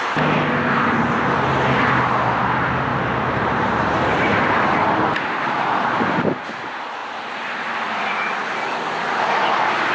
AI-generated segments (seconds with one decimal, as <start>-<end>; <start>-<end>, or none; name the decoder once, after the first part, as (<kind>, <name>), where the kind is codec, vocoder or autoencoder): 2.9-4.5 (vocoder, BigVGAN v2)